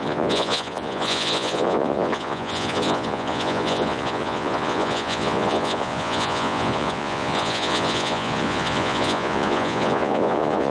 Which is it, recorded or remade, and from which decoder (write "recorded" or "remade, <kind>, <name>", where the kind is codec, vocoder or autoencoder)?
remade, vocoder, Vocos